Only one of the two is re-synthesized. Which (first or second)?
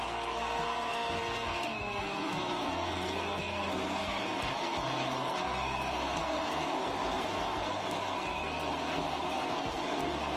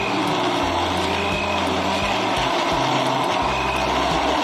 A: first